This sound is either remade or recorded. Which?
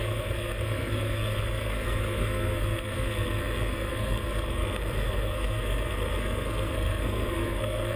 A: remade